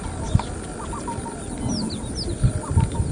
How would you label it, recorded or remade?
recorded